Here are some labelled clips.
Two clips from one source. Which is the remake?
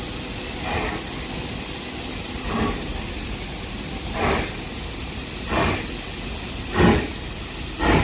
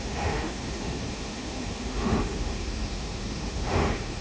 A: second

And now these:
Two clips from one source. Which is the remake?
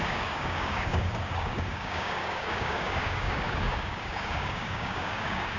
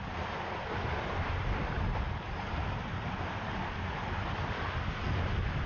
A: first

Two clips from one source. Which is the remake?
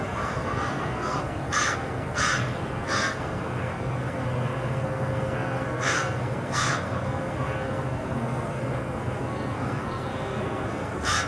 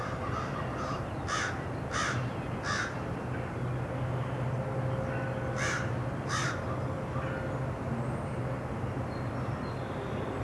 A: first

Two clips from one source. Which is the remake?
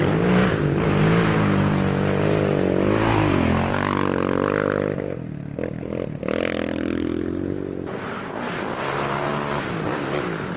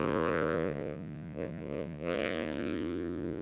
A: second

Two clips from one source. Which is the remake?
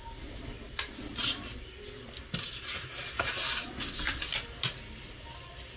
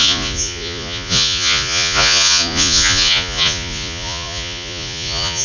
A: second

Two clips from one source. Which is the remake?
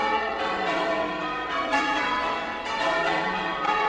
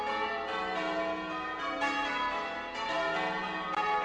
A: first